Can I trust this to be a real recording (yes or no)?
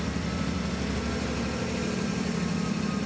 yes